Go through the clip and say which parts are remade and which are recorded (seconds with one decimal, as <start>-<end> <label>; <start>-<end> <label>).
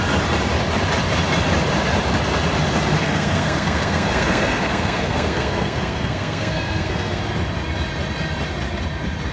0.0-3.0 recorded; 3.0-7.2 remade; 7.2-9.3 recorded